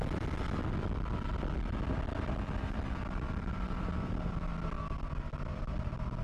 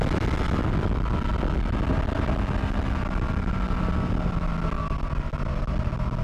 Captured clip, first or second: second